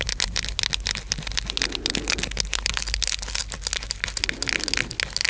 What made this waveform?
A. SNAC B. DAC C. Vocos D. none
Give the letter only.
D